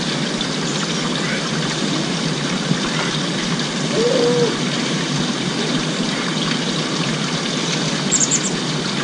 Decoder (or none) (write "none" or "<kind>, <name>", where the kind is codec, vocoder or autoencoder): none